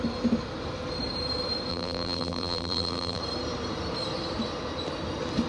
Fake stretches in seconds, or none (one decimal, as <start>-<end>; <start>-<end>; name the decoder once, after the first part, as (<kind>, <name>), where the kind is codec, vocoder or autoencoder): 1.7-3.2 (vocoder, BigVGAN v2)